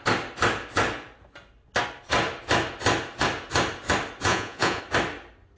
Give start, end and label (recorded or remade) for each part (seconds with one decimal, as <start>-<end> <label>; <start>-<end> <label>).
0.0-4.3 recorded; 4.3-4.8 remade; 4.8-5.6 recorded

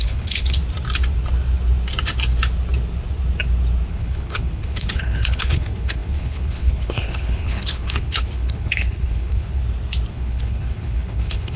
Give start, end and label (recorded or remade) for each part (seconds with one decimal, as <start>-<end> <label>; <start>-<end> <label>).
0.0-0.6 remade; 0.6-3.9 recorded; 3.9-9.6 remade; 9.6-10.1 recorded; 10.1-11.6 remade

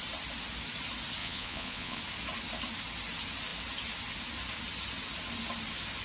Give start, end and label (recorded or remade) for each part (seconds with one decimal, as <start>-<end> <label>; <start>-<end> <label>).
0.0-1.2 recorded; 1.2-2.0 remade; 2.0-6.0 recorded